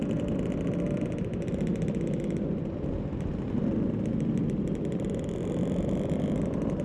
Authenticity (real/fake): real